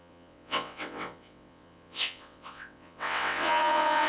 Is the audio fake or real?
fake